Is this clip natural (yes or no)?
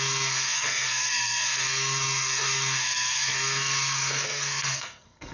no